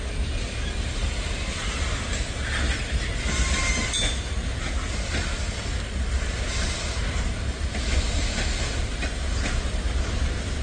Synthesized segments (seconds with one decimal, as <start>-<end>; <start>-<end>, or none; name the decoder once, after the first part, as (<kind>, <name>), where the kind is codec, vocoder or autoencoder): none